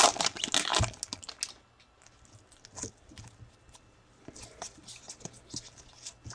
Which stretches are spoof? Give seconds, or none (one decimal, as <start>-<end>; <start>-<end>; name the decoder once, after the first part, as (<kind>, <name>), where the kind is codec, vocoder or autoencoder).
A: none